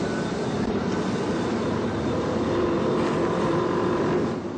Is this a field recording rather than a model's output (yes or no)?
yes